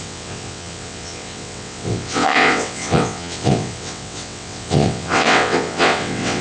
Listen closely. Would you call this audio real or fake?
fake